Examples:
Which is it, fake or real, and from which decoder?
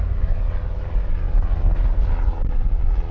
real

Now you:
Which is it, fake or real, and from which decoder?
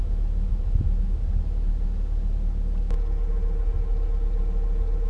real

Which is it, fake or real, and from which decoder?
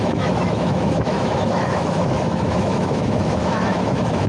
fake, autoencoder, DAC-VAE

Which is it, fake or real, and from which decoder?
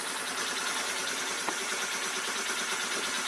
real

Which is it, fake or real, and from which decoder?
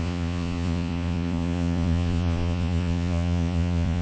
fake, vocoder, Vocos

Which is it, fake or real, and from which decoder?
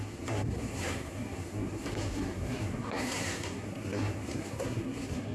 fake, codec, SNAC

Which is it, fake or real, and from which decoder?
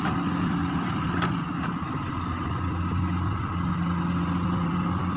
real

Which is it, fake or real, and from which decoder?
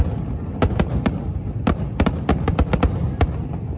real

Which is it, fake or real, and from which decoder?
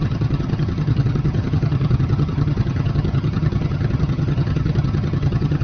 fake, vocoder, HiFi-GAN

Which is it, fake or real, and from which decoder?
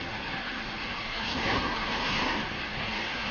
fake, codec, SNAC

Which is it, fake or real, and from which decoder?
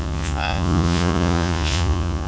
fake, vocoder, Vocos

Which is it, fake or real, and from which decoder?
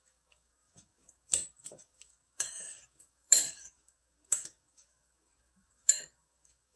fake, codec, DAC